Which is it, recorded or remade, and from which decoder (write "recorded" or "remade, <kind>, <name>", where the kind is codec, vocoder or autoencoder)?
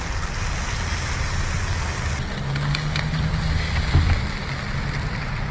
recorded